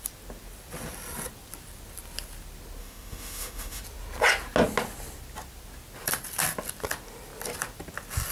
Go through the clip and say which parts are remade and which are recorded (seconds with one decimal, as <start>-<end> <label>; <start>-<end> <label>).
0.0-2.8 recorded; 2.8-3.8 remade; 3.8-8.3 recorded